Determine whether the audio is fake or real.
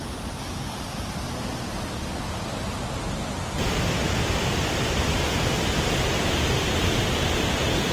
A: real